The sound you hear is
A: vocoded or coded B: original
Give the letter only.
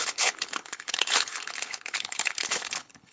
A